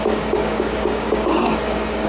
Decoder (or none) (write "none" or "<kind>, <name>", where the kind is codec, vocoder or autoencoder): codec, DAC